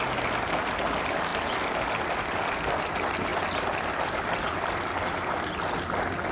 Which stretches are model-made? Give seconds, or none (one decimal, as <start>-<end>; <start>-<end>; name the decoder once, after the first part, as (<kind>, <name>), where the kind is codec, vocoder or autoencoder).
none